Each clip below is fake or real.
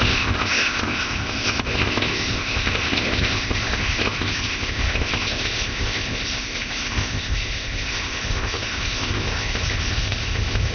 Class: fake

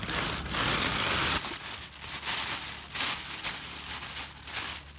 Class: real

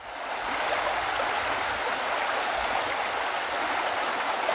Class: real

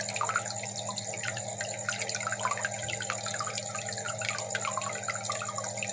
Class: real